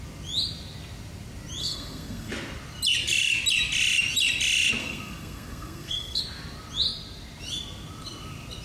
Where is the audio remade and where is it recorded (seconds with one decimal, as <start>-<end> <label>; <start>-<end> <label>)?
0.0-1.6 recorded; 1.6-2.3 remade; 2.3-4.8 recorded; 4.8-6.2 remade; 6.2-8.6 recorded

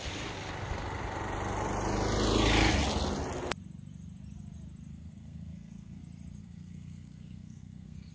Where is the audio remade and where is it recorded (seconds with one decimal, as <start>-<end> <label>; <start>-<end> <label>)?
0.0-4.9 recorded; 4.9-6.0 remade; 6.0-6.4 recorded; 6.4-8.1 remade

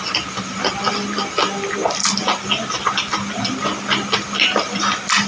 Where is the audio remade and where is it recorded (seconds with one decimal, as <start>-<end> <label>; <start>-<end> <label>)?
0.0-5.3 recorded

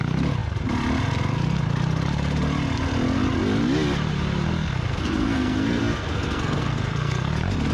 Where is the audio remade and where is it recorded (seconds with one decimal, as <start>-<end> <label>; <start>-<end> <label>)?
0.0-4.6 recorded; 4.6-7.3 remade; 7.3-7.7 recorded

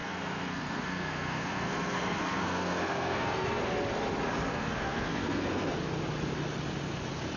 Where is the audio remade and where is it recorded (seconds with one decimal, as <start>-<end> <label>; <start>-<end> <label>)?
0.0-3.6 remade; 3.6-4.5 recorded; 4.5-5.7 remade; 5.7-7.4 recorded